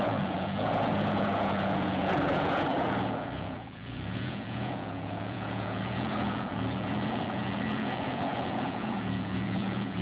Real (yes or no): no